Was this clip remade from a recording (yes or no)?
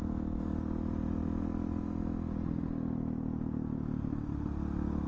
no